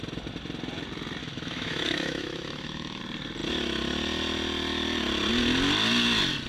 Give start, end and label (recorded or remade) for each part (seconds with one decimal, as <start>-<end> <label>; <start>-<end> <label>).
0.0-1.2 recorded; 1.2-3.0 remade; 3.0-6.5 recorded